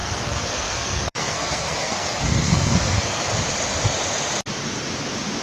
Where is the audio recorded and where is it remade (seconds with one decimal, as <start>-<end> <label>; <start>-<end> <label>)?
0.0-3.2 remade; 3.2-5.4 recorded